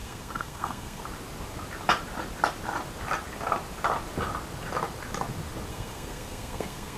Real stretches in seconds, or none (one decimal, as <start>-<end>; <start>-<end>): 1.0-5.7